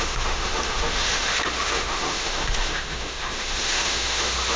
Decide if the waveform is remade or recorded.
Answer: remade